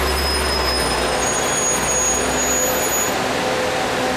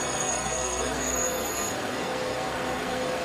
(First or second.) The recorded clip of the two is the first